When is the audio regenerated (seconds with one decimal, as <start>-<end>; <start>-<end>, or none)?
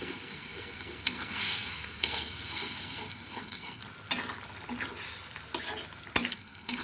0.0-3.8; 6.3-6.8